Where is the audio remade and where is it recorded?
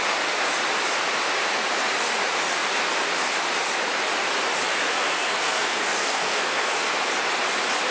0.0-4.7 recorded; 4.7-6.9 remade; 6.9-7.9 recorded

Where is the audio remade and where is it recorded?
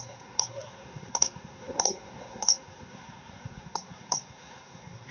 0.0-5.1 remade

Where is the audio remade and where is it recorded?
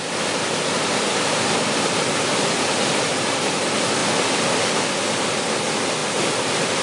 0.0-6.8 recorded